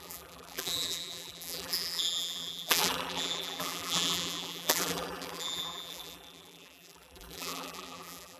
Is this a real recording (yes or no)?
no